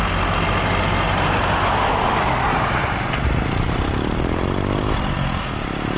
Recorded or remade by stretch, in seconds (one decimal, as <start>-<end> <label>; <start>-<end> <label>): 0.0-2.5 recorded; 2.5-4.4 remade; 4.4-6.0 recorded